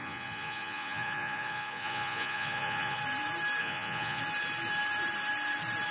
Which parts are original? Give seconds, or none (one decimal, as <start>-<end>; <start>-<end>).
3.0-3.6; 4.2-5.9